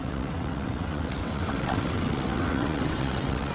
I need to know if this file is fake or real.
fake